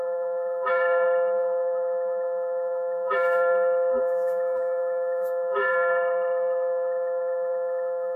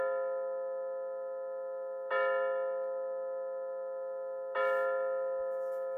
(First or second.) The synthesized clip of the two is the first